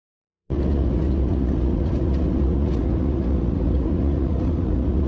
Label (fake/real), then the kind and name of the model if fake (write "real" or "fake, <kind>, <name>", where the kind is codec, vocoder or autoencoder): fake, vocoder, Vocos